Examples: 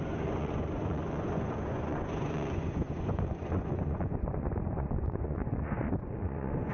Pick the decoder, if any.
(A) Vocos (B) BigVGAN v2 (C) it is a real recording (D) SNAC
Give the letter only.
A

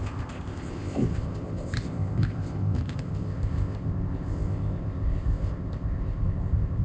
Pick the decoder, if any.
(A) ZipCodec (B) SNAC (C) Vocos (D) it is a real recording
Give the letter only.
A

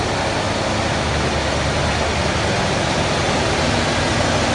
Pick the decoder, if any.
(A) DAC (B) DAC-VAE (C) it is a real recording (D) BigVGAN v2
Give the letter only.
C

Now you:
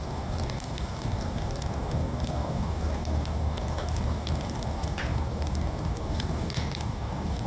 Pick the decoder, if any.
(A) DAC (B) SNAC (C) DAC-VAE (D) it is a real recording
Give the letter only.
A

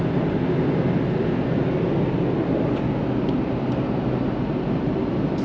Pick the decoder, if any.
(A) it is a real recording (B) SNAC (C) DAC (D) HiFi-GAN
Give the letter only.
A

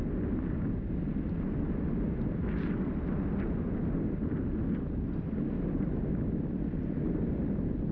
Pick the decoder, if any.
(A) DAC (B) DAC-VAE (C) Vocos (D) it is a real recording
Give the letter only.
D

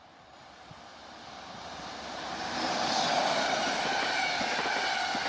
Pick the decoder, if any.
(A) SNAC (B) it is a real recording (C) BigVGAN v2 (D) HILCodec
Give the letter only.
B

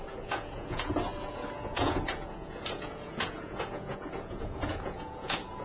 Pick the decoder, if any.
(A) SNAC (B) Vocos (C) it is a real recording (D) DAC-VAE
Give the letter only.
B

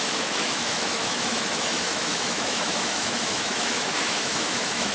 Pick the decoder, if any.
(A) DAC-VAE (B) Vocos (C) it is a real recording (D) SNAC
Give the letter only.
A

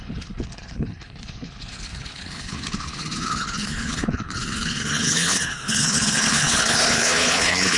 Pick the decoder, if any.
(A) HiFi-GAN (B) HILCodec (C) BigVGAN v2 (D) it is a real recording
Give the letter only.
B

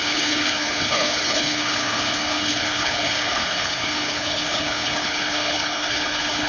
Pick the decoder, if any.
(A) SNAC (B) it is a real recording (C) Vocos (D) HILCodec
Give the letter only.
D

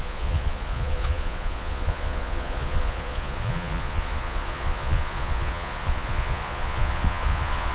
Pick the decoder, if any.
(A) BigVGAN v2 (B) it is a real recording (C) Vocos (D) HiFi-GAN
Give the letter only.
C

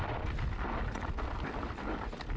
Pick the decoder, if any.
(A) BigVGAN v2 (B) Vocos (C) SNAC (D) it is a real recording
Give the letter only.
D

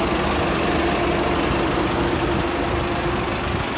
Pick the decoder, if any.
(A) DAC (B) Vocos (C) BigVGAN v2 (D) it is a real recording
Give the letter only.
D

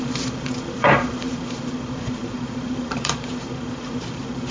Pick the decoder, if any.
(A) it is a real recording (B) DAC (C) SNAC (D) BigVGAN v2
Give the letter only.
D